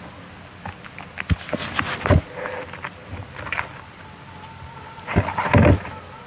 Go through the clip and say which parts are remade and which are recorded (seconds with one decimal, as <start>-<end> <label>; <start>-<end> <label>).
0.0-6.3 recorded